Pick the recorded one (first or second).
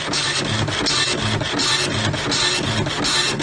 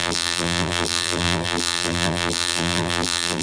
first